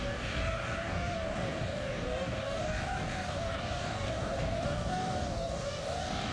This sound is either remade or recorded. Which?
remade